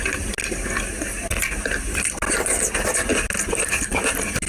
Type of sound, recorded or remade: recorded